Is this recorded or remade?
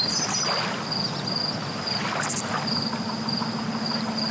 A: recorded